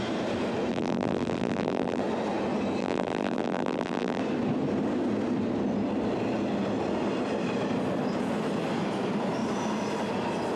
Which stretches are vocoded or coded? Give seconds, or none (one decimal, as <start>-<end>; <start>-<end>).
0.7-2.0; 2.8-4.2